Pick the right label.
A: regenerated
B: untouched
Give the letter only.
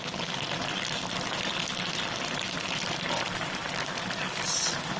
B